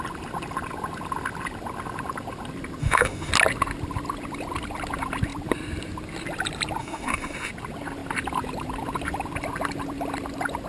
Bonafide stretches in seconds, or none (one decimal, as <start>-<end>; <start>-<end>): 0.0-2.8; 3.3-6.8; 7.5-10.7